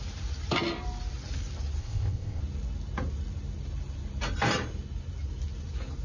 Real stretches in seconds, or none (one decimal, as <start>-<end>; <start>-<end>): 0.0-1.8; 2.4-6.0